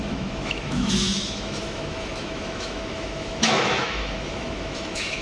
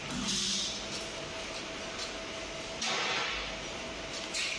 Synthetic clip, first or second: first